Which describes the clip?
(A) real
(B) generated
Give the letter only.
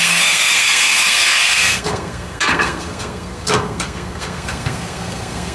B